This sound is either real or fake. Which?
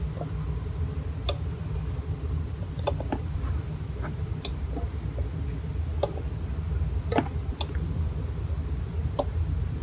real